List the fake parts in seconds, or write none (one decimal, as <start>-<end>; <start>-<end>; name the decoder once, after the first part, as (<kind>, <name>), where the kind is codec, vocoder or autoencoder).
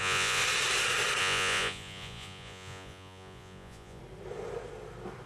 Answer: 0.0-0.4 (vocoder, Vocos); 1.2-4.0